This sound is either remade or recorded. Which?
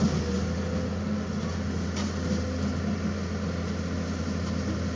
recorded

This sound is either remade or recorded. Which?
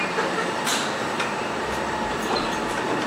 remade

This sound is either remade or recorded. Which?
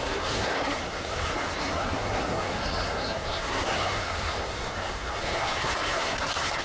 remade